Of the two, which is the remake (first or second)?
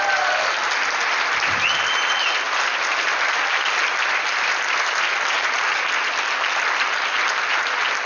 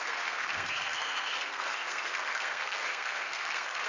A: second